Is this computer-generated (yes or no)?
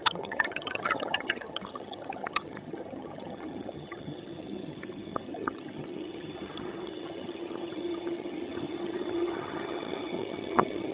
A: yes